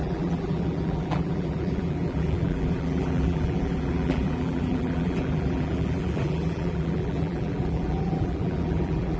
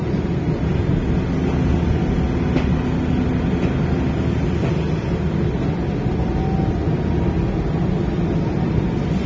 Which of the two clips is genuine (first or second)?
second